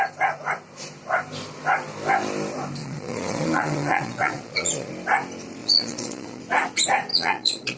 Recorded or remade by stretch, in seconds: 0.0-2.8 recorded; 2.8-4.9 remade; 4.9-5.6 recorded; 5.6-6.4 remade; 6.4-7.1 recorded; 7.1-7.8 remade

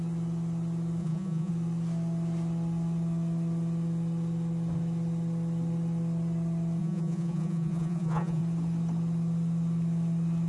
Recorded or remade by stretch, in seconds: 0.0-1.0 recorded; 1.0-1.5 remade; 1.5-6.8 recorded; 6.8-8.4 remade; 8.4-10.5 recorded